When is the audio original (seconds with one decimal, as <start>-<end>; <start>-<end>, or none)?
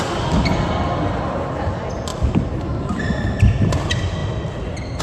0.0-5.0